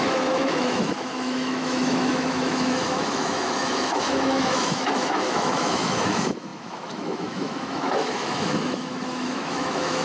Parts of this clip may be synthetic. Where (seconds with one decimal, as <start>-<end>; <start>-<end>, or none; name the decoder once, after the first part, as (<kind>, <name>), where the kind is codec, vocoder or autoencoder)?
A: 0.0-10.0 (autoencoder, DAC-VAE)